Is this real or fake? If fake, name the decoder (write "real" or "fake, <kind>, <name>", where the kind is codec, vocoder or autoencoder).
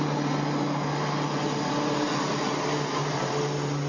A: real